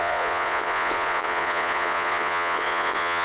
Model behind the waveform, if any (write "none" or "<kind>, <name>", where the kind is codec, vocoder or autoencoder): vocoder, Vocos